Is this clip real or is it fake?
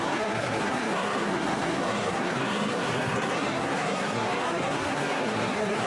fake